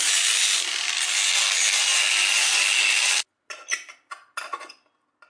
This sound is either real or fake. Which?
real